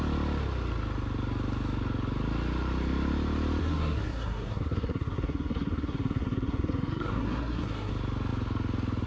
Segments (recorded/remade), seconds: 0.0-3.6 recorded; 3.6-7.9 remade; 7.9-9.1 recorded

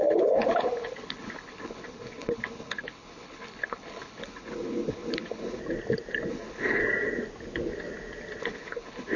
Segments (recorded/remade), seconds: 0.0-5.6 remade; 5.6-6.3 recorded; 6.3-6.8 remade; 6.8-8.4 recorded; 8.4-9.2 remade

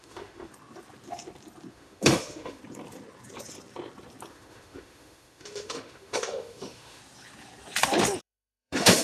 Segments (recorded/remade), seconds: 0.0-0.5 remade; 0.5-1.7 recorded; 1.7-2.6 remade; 2.6-4.3 recorded; 4.3-7.0 remade; 7.0-8.2 recorded; 8.2-9.0 remade

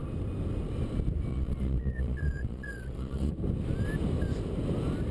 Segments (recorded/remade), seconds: 0.0-1.3 recorded; 1.3-3.3 remade; 3.3-5.1 recorded

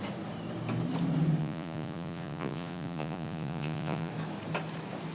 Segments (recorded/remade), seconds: 0.0-1.4 recorded; 1.4-4.1 remade; 4.1-5.1 recorded

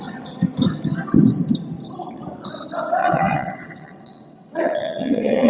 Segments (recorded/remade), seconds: 0.0-3.0 recorded; 3.0-5.5 remade

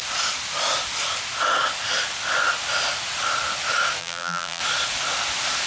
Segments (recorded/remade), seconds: 0.0-4.0 recorded; 4.0-4.6 remade; 4.6-5.7 recorded

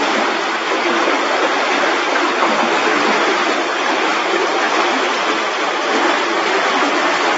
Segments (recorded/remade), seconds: 0.0-7.4 recorded